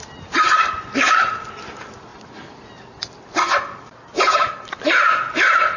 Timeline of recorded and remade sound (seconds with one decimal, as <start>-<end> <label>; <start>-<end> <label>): 0.0-5.8 recorded